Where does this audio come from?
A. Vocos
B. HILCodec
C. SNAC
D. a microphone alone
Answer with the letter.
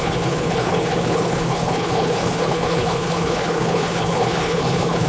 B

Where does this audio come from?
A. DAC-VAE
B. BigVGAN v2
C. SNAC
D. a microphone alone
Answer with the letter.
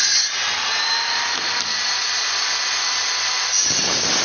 D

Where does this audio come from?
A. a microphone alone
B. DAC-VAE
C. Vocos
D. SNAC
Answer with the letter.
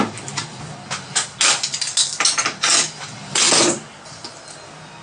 A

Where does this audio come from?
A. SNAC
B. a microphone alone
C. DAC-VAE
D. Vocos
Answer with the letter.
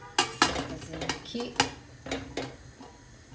B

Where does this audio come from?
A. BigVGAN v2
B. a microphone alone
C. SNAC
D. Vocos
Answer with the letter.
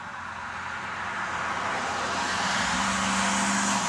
B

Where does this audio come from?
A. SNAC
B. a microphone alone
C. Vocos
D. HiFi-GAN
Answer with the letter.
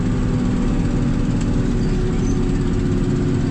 B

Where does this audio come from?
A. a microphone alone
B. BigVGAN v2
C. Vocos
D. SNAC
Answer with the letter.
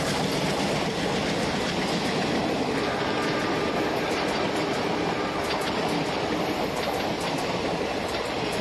A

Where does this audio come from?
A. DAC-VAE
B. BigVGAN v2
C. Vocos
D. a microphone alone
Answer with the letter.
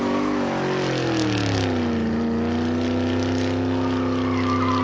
D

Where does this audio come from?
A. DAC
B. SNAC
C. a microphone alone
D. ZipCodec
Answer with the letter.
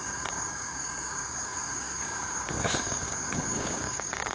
A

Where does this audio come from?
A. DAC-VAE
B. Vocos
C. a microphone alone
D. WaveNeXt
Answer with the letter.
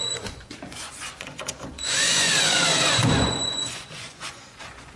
B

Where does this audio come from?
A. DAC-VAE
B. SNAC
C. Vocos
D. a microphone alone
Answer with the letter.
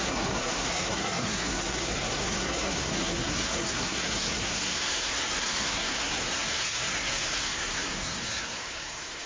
B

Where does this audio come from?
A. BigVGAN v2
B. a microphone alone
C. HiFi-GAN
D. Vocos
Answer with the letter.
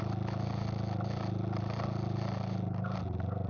B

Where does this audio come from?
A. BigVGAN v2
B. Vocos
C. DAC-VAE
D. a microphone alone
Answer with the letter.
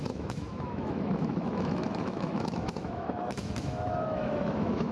C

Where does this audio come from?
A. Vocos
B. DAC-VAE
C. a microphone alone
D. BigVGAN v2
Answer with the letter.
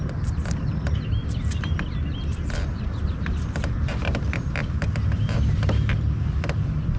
D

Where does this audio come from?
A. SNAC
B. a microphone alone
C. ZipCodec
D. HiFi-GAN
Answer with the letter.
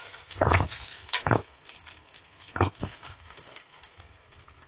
A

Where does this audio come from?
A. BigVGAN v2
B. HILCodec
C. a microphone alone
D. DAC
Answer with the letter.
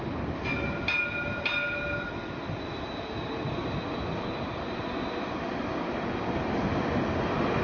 C